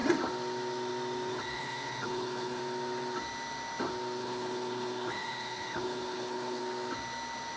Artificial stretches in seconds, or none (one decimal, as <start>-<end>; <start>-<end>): 1.3-2.6; 4.2-6.6